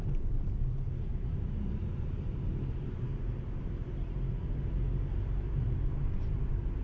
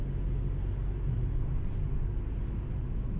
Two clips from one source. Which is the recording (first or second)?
second